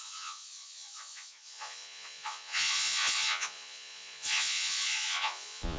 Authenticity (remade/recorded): remade